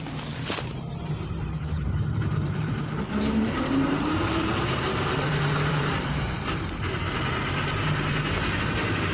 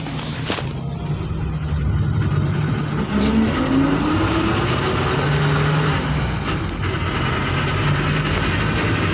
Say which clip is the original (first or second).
second